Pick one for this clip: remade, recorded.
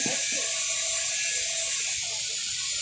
recorded